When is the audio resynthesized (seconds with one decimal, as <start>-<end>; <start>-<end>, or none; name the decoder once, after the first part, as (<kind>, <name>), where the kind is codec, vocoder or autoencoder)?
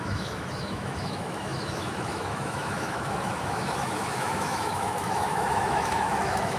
0.0-6.6 (autoencoder, DAC-VAE)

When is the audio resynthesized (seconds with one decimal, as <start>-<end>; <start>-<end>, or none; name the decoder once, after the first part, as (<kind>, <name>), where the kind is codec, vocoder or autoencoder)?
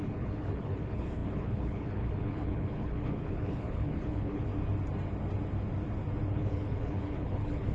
0.0-4.5 (codec, HILCodec); 6.3-7.7